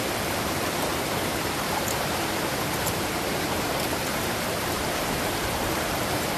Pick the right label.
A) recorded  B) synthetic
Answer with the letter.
B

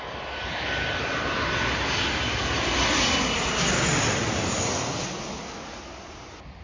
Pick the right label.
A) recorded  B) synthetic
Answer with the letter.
A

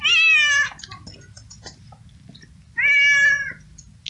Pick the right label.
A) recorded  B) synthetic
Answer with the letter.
A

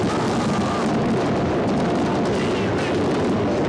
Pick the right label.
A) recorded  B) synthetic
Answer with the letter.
A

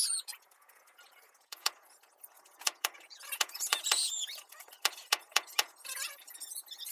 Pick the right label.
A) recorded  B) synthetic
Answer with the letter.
B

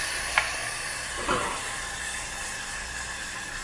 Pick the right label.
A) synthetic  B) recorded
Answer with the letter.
B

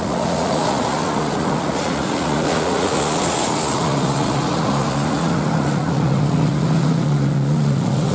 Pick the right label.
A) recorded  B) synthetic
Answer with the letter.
B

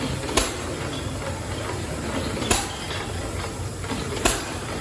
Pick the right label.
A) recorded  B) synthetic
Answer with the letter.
A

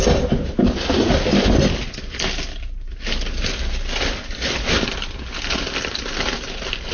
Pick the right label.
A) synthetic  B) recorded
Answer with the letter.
B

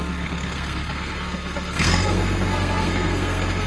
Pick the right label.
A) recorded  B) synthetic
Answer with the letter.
B